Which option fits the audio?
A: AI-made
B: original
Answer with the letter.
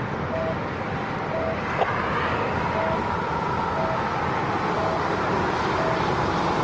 B